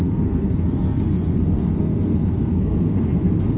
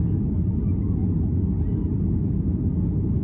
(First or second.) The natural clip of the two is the second